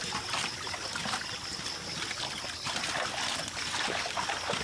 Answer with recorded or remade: recorded